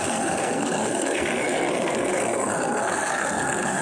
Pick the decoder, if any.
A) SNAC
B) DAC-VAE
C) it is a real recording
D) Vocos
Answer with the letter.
A